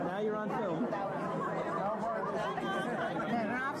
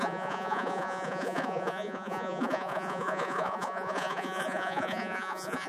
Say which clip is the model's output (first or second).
second